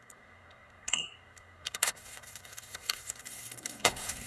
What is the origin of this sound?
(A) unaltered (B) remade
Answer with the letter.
B